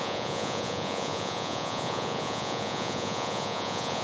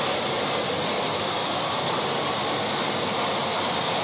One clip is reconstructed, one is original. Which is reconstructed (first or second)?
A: first